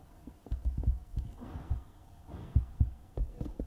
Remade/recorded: remade